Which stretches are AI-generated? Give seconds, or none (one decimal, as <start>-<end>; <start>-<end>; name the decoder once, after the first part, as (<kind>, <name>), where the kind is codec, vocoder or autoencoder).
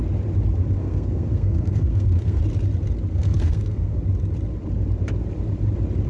0.8-2.4 (codec, SNAC); 3.1-4.0